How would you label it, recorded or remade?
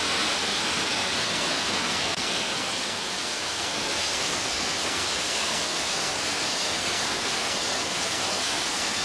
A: remade